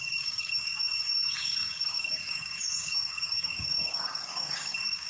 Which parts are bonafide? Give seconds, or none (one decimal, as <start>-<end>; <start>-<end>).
none